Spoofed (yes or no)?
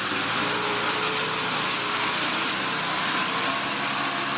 no